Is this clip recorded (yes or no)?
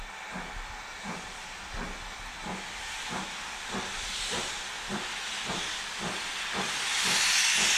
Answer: yes